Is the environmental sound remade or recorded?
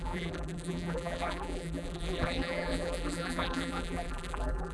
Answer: remade